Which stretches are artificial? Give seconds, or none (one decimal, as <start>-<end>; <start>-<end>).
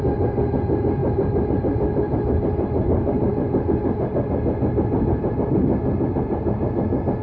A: none